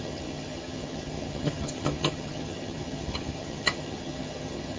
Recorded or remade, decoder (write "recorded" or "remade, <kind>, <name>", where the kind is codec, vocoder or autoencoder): remade, vocoder, HiFi-GAN